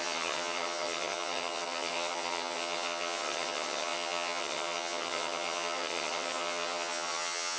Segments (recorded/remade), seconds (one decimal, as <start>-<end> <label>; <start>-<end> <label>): 0.0-7.6 remade